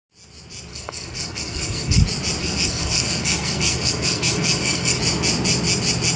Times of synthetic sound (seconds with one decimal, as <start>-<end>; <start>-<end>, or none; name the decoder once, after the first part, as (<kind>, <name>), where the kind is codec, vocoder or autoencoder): 0.7-2.0 (codec, SNAC); 2.4-5.0